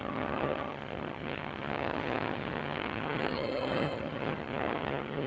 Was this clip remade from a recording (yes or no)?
yes